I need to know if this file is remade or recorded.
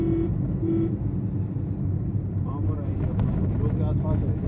recorded